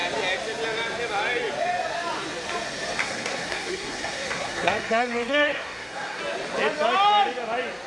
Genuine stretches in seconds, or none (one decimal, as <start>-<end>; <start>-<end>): 0.0-3.0; 6.2-7.9